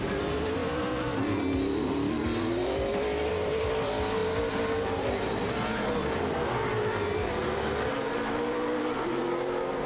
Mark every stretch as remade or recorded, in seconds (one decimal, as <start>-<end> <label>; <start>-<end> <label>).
0.0-9.9 recorded